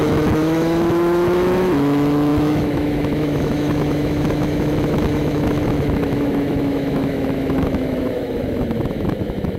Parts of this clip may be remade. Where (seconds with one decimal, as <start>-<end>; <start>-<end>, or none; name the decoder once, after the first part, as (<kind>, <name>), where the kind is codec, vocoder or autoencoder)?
0.0-9.6 (autoencoder, DAC-VAE)

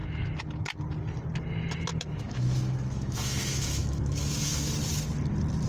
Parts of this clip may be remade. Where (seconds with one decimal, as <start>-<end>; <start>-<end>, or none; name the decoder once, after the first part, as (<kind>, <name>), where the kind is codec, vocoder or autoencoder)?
1.9-4.7 (autoencoder, DAC-VAE)